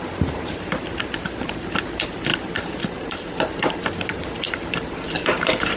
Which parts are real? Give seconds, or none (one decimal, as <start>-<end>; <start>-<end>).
none

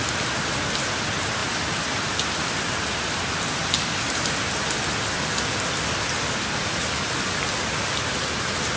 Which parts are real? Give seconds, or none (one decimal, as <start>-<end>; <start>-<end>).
0.0-1.4; 2.1-8.8

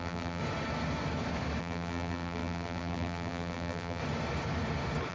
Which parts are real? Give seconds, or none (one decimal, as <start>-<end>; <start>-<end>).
0.4-1.6; 4.0-5.1

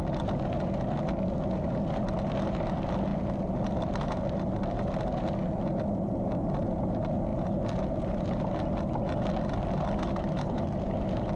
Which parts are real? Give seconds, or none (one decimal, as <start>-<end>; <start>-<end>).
0.0-11.4

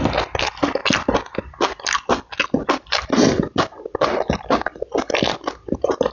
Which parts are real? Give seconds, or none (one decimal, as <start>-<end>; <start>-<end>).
0.0-6.1

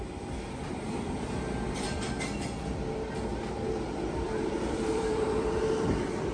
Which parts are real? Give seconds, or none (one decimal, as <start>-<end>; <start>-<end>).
0.0-3.3; 5.6-6.3